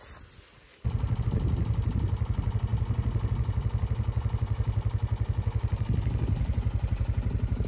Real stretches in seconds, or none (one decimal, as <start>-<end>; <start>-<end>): 0.0-7.7